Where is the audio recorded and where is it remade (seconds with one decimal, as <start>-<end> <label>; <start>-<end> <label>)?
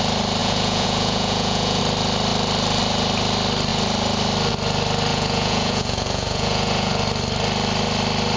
0.0-0.4 recorded; 0.4-1.8 remade; 1.8-5.1 recorded; 5.1-6.9 remade; 6.9-8.4 recorded